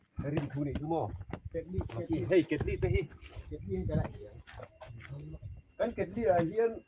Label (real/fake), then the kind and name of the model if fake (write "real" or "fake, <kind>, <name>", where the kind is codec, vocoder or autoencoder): real